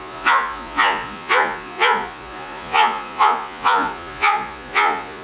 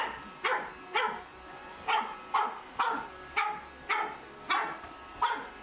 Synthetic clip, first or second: first